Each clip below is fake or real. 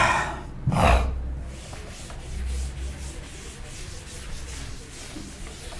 real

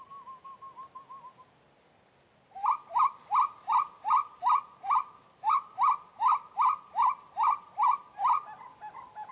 real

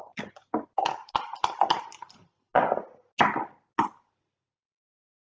real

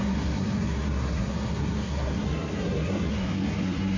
fake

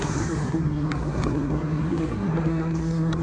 fake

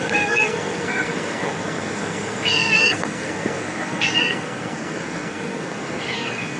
fake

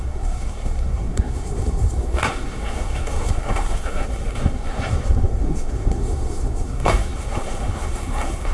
fake